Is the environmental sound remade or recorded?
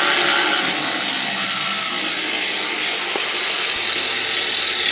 recorded